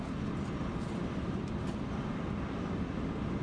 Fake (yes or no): no